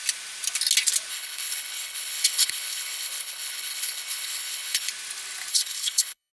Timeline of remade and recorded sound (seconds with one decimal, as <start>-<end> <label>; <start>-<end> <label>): 0.0-1.1 recorded; 1.1-4.9 remade; 4.9-5.5 recorded; 5.5-6.3 remade